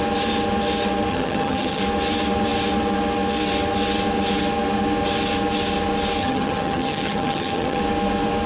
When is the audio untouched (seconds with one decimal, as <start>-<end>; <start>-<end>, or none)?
0.0-1.1; 1.8-6.2; 7.8-8.5